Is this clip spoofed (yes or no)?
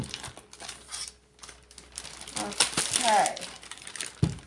no